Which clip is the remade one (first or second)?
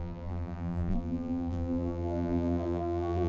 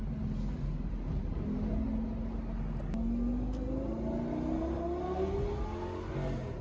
first